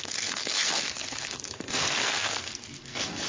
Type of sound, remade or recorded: remade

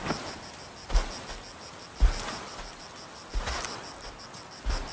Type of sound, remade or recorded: recorded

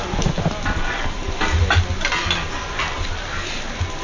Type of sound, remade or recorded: recorded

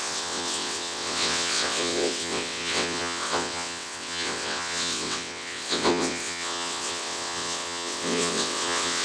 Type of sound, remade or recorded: remade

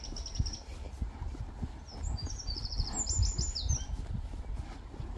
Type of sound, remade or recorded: recorded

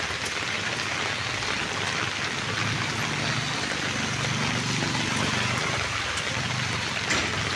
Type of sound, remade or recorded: recorded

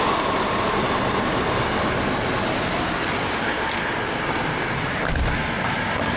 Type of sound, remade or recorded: recorded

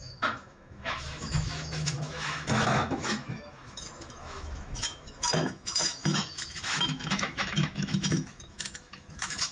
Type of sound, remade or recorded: remade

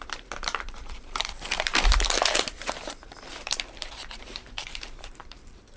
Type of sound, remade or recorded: remade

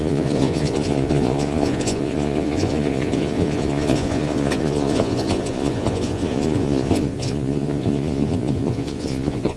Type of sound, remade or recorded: remade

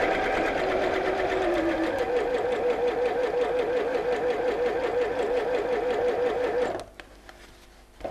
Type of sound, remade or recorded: recorded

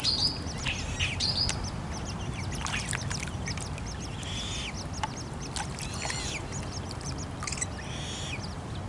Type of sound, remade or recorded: recorded